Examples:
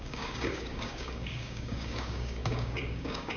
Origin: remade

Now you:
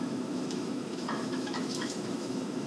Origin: remade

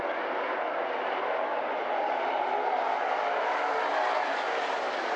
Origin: recorded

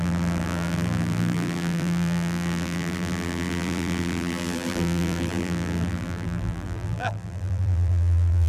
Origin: remade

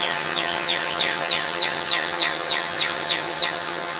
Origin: remade